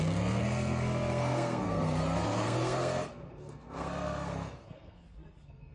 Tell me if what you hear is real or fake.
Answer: fake